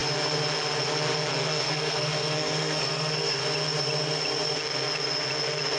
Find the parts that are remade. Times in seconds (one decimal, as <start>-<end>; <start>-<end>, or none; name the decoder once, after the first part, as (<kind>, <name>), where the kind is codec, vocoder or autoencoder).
1.3-3.4 (codec, SNAC)